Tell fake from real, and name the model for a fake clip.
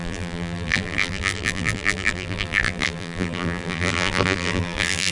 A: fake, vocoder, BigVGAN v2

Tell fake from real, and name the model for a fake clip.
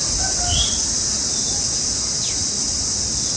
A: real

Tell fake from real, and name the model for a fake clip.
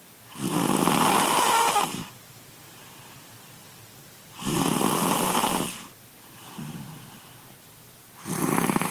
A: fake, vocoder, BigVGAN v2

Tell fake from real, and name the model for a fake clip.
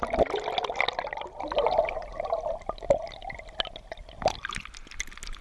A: real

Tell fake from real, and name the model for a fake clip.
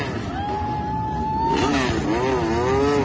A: real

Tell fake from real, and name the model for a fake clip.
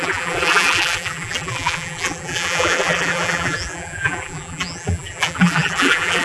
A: fake, vocoder, BigVGAN v2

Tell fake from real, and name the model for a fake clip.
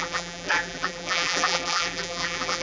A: fake, vocoder, BigVGAN v2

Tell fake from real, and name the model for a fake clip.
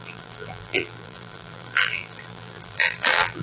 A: fake, vocoder, BigVGAN v2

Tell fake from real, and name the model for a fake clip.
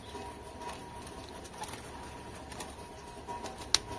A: real